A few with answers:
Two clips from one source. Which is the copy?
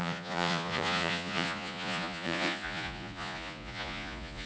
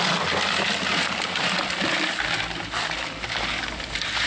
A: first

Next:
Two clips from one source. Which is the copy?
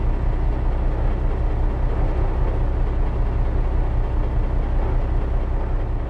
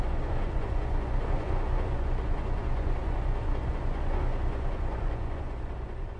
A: second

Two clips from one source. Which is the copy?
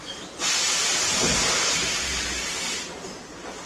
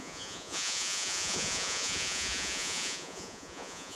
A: second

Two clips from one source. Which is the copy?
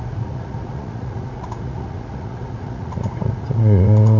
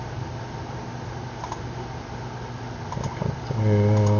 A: first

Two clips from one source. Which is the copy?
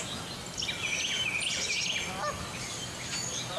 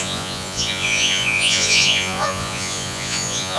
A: second